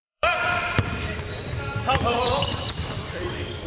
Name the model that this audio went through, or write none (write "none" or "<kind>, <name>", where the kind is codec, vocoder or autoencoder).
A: vocoder, BigVGAN v2